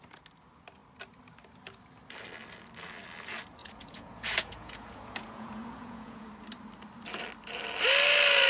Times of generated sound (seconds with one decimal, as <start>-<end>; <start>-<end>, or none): 3.6-6.3